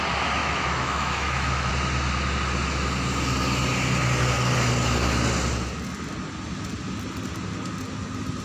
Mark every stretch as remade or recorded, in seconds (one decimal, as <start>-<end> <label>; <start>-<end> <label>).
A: 0.0-0.4 recorded; 0.4-1.7 remade; 1.7-8.4 recorded